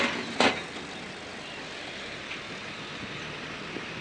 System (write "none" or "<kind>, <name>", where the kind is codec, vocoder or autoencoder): none